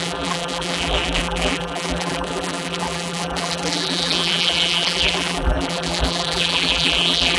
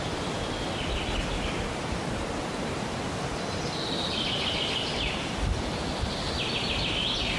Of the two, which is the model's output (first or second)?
first